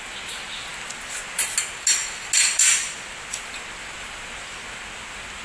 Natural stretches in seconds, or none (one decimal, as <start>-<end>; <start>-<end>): 0.0-5.4